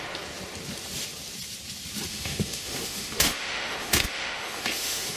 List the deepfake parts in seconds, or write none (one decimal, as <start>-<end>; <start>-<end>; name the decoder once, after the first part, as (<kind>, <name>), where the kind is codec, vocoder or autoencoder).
2.1-5.2 (autoencoder, DAC-VAE)